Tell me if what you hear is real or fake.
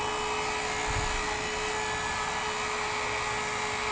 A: real